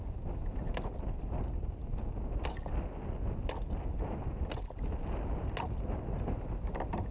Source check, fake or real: real